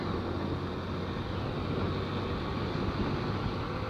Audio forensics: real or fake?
real